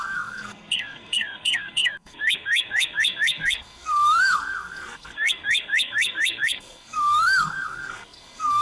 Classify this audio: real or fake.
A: fake